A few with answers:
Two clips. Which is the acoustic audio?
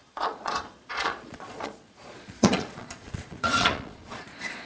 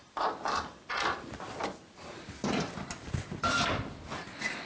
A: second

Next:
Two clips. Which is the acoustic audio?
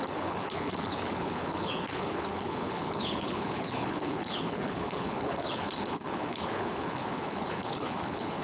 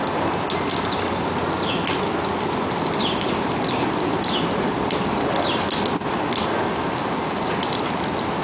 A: second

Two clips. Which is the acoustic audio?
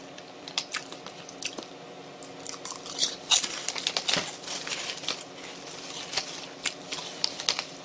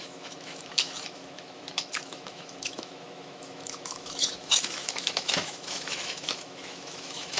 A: first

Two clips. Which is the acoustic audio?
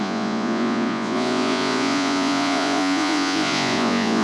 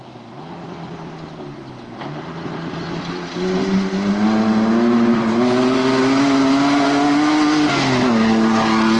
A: second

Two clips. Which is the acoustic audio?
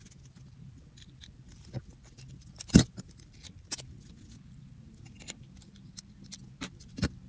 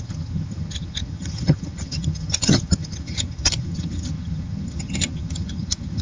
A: first